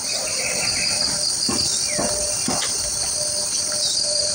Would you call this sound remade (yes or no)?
no